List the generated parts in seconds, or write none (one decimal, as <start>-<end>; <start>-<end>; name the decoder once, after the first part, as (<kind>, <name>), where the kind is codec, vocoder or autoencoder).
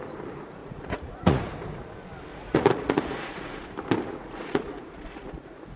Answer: 0.6-1.4 (vocoder, Vocos); 2.3-3.6; 4.1-5.8